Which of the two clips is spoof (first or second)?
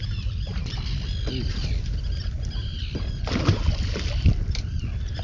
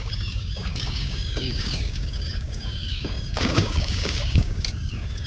second